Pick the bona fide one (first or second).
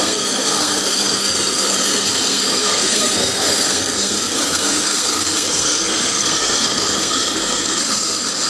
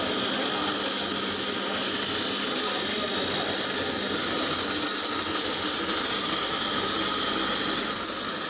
second